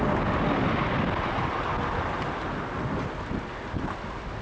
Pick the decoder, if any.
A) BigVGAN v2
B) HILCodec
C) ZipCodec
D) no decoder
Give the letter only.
D